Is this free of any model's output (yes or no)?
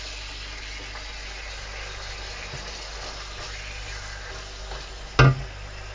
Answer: yes